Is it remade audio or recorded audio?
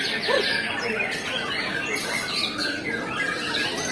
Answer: recorded